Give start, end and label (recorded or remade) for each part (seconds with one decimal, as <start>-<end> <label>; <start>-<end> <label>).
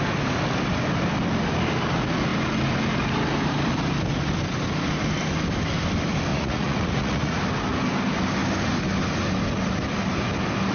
0.0-6.3 recorded; 6.3-7.4 remade; 7.4-10.7 recorded